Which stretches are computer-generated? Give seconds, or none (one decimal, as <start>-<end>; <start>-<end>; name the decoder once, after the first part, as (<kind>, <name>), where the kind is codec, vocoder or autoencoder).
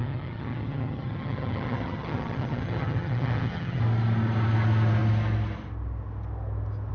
0.0-3.8 (vocoder, HiFi-GAN)